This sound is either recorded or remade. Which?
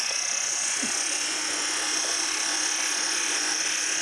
remade